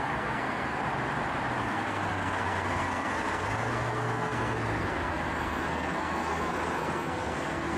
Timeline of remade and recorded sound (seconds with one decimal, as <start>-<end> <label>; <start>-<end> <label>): 0.0-0.8 remade; 0.8-1.6 recorded; 1.6-7.8 remade